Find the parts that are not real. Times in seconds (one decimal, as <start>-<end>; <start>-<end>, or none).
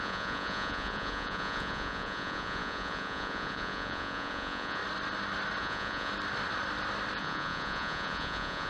0.0-4.8; 5.6-6.1; 7.2-8.7